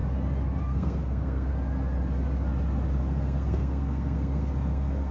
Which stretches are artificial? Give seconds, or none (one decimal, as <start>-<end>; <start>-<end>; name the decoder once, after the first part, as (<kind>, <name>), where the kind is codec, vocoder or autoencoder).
0.6-1.5 (codec, SNAC); 3.0-5.1